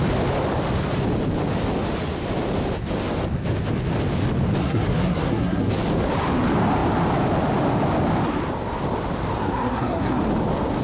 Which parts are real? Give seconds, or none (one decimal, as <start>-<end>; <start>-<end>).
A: 0.0-4.6; 5.7-9.4; 10.2-10.8